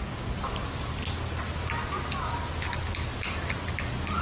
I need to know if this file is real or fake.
real